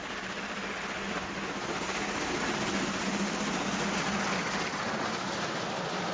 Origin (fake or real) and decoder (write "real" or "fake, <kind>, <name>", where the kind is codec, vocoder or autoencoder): real